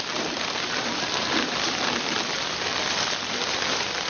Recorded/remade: remade